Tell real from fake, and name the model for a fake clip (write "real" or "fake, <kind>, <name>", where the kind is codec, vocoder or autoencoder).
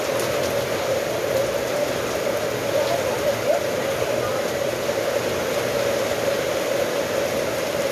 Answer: real